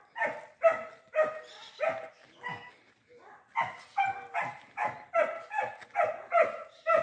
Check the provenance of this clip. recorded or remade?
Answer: recorded